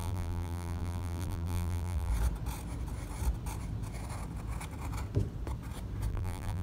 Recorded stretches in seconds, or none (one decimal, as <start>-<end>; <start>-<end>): 2.1-6.1